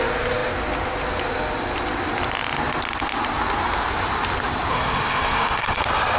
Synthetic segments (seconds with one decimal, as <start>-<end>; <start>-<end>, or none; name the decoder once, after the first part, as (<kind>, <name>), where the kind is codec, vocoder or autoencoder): 4.7-5.8 (codec, SNAC)